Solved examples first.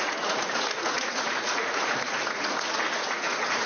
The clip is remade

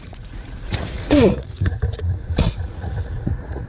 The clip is remade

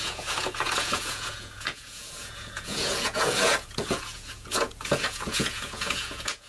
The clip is remade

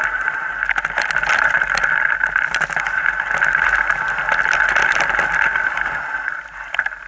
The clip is recorded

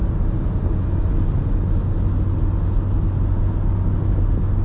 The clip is recorded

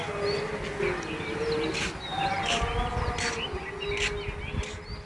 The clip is recorded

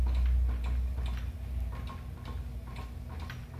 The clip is recorded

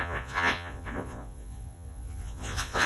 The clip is remade